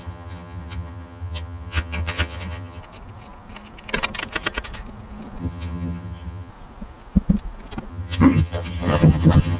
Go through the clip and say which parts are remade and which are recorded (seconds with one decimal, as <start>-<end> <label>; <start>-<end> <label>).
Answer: 0.0-2.8 remade; 2.8-5.4 recorded; 5.4-6.5 remade; 6.5-7.9 recorded; 7.9-9.6 remade